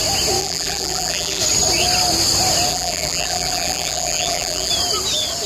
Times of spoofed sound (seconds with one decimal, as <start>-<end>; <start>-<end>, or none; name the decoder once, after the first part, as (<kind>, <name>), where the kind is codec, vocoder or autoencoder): 0.4-1.4 (vocoder, BigVGAN v2); 2.7-4.7